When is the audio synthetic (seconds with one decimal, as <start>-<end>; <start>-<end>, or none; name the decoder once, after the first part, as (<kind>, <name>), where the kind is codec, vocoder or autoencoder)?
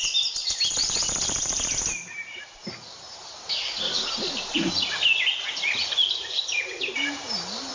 0.4-4.7 (vocoder, BigVGAN v2); 5.8-6.8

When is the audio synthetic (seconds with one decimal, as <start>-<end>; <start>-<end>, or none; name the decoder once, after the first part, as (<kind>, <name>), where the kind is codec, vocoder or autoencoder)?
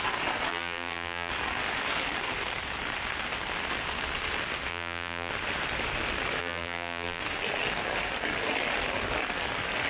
0.5-1.3 (vocoder, BigVGAN v2); 4.7-5.3; 6.4-7.2